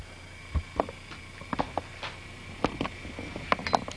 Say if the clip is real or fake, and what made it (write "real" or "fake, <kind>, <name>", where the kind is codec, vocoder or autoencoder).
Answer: real